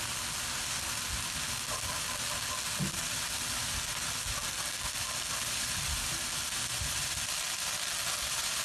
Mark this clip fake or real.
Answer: real